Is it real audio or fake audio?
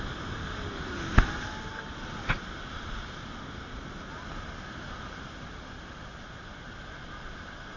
real